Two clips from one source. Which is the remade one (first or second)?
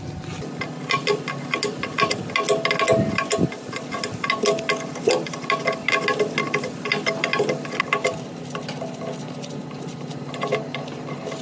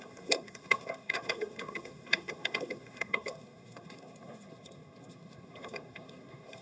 second